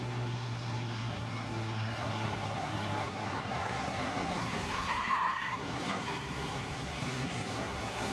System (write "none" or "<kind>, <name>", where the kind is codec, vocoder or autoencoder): codec, SNAC